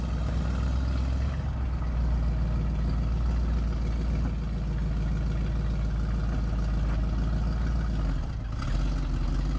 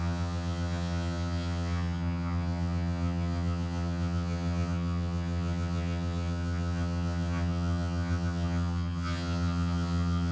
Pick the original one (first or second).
first